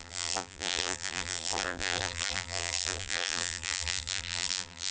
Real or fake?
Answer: fake